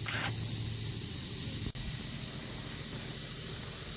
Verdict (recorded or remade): recorded